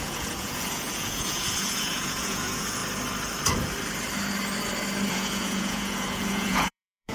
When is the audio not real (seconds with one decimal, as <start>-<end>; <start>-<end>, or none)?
0.0-2.8; 5.1-7.1